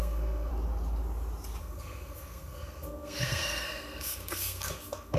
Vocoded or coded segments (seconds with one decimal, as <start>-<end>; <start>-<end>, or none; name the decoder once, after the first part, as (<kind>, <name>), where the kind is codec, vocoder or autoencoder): 0.0-0.5 (codec, SNAC); 1.6-5.2